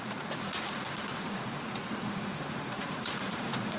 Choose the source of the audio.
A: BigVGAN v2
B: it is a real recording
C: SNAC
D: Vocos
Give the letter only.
D